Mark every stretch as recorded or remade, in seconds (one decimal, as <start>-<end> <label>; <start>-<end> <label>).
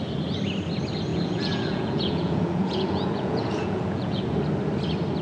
0.0-1.1 recorded; 1.1-4.2 remade; 4.2-5.2 recorded